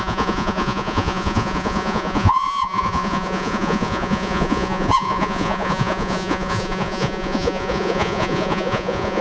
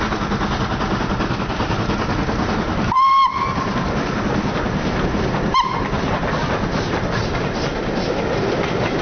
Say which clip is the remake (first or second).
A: first